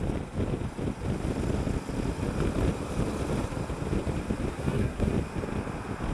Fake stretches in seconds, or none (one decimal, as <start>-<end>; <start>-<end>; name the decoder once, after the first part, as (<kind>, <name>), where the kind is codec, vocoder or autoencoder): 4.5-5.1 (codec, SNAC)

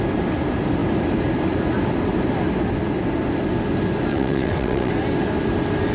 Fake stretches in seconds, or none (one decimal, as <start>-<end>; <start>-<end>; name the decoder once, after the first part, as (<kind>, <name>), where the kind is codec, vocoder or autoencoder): 4.1-4.9 (vocoder, WaveNeXt)

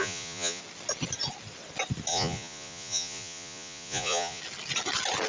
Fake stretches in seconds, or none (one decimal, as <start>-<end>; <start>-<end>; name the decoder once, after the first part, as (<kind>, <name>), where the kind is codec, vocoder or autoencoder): 0.0-0.6 (vocoder, Vocos); 2.1-4.4

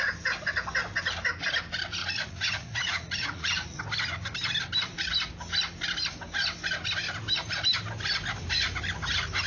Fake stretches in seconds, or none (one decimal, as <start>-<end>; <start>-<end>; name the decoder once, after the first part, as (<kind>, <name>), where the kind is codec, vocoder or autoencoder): 2.0-3.8 (vocoder, Vocos)

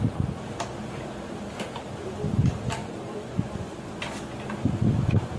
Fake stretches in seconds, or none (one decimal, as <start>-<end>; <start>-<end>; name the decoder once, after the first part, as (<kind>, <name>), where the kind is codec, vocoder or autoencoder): 2.8-4.0 (vocoder, Vocos)

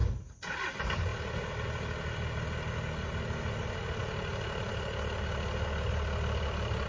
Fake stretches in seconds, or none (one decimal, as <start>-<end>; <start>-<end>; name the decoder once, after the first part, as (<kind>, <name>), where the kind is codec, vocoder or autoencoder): 0.7-1.1 (vocoder, BigVGAN v2); 3.5-4.0; 5.9-6.9